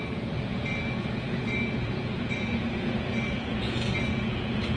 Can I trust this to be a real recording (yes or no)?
no